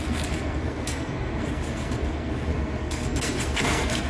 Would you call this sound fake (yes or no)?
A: yes